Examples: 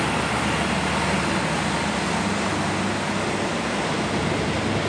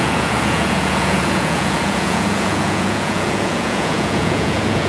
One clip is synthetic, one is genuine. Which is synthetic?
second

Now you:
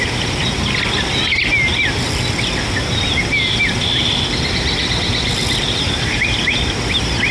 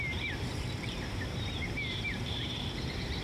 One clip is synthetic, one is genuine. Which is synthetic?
second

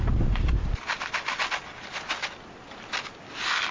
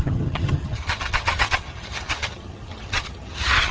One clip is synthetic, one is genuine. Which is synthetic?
second